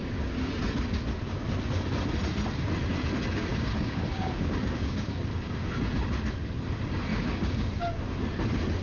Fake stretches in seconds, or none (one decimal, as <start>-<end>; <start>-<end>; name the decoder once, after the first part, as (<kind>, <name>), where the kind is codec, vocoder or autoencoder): 0.0-0.5 (codec, DAC); 3.5-5.7; 7.1-8.0